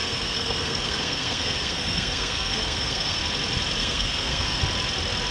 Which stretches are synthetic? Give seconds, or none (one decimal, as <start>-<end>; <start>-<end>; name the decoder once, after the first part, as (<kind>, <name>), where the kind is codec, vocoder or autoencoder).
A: 0.0-3.2 (codec, SNAC); 3.8-4.6